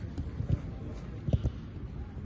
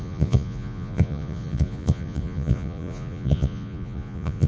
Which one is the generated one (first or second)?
second